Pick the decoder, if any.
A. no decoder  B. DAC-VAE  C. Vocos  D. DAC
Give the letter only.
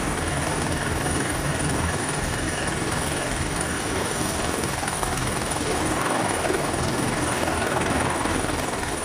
D